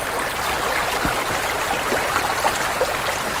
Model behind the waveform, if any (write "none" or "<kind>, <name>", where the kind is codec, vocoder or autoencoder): none